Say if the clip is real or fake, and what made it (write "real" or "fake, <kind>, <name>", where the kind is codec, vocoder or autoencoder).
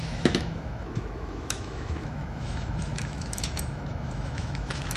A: fake, autoencoder, DAC-VAE